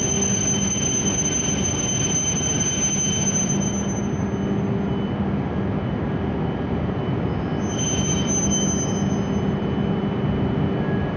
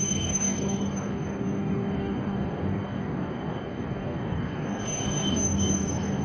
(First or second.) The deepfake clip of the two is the second